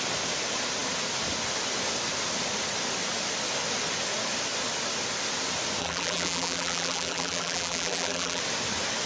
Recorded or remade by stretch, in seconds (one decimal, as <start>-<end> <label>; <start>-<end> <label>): 0.0-5.8 recorded; 5.8-8.4 remade; 8.4-9.1 recorded